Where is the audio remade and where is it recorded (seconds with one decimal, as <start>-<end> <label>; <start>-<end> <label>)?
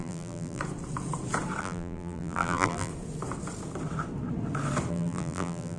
0.0-0.6 remade; 0.6-1.6 recorded; 1.6-2.9 remade; 2.9-4.9 recorded; 4.9-5.8 remade